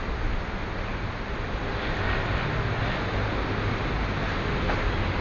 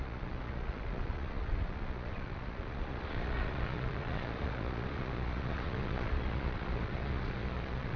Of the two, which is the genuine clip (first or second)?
first